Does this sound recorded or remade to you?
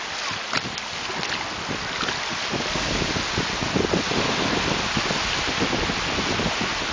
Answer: recorded